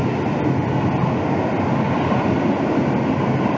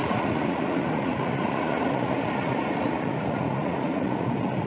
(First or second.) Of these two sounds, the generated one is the second